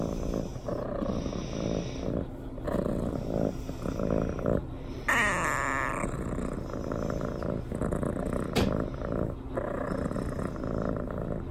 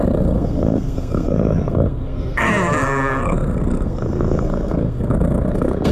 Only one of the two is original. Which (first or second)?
first